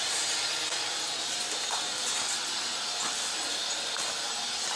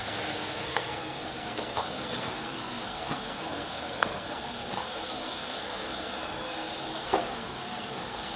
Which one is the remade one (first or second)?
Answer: second